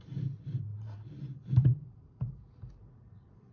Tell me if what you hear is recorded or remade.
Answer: remade